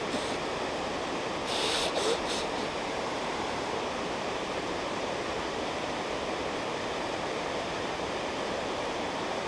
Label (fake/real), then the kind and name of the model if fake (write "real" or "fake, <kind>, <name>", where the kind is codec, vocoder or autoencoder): fake, vocoder, BigVGAN v2